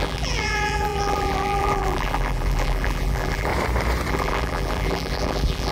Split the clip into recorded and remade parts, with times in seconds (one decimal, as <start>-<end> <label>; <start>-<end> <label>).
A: 0.0-3.5 remade; 3.5-4.1 recorded; 4.1-5.7 remade